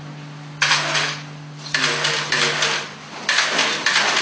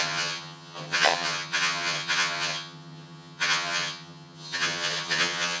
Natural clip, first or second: first